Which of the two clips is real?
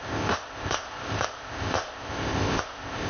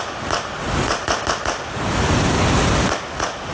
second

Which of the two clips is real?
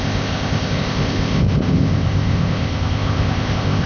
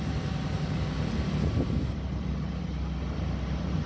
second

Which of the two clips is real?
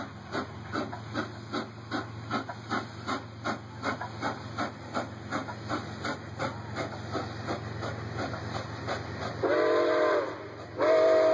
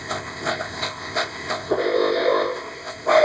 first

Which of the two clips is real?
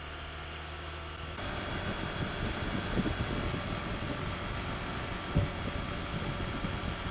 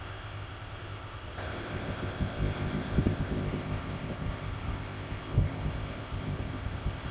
first